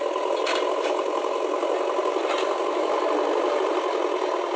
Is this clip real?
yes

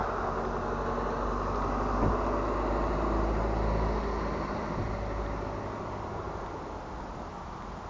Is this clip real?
yes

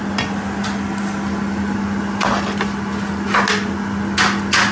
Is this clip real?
yes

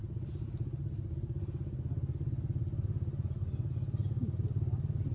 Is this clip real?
yes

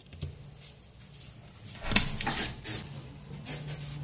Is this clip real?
yes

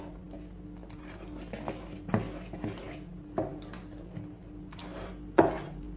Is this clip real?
yes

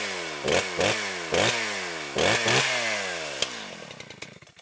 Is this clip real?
yes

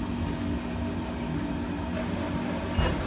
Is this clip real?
yes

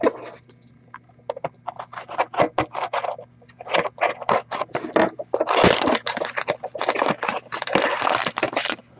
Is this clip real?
yes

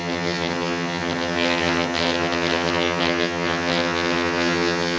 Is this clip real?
no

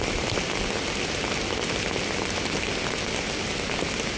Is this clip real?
yes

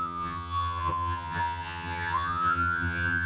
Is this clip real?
no